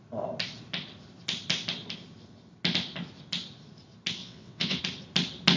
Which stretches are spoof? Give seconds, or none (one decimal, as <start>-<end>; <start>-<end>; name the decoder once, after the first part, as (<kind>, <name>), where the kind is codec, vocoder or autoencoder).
4.2-4.8 (vocoder, WaveNeXt)